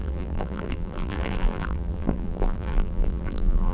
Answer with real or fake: fake